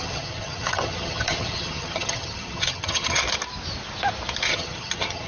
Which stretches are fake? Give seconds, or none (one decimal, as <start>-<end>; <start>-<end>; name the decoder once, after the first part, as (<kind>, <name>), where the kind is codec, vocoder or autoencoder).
0.0-3.2 (vocoder, HiFi-GAN); 4.5-5.3